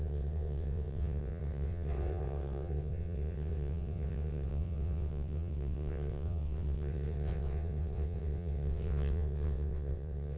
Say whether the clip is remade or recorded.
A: remade